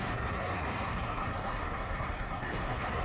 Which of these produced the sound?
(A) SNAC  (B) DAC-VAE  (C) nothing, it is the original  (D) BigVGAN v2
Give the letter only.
A